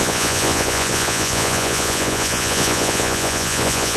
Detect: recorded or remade remade